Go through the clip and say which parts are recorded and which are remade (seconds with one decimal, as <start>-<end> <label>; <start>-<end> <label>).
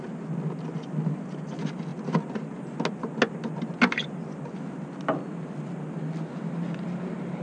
0.0-7.4 recorded